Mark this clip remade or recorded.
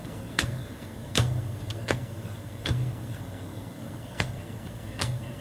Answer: remade